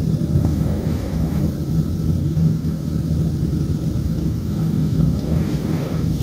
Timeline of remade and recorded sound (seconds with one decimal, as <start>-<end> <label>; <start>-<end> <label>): 0.0-0.4 recorded; 0.4-1.4 remade; 1.4-2.2 recorded; 2.2-2.9 remade; 2.9-4.0 recorded; 4.0-6.2 remade